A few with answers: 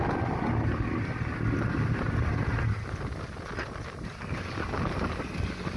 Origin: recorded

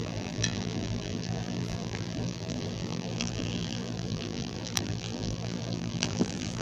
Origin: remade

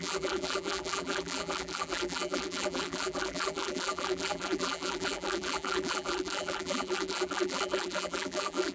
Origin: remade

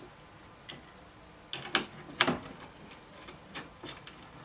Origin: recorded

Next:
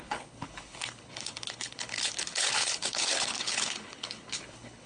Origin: remade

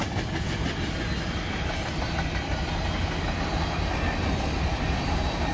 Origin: recorded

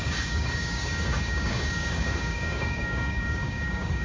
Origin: remade